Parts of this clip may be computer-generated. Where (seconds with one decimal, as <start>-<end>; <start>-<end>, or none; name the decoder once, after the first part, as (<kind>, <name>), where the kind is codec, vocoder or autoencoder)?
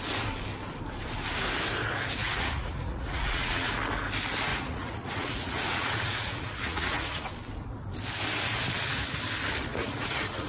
2.2-3.7 (vocoder, Vocos); 4.5-7.3; 9.7-10.5